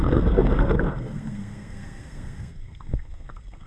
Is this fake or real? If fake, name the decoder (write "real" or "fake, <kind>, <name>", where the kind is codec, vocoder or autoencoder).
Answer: fake, codec, SNAC